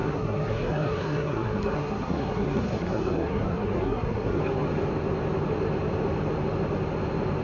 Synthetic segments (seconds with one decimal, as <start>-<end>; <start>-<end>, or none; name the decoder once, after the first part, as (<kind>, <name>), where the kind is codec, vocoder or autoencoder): 0.0-4.4 (codec, SNAC)